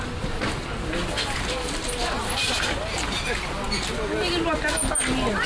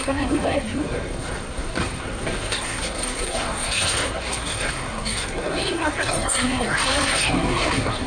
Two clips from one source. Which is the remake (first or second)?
second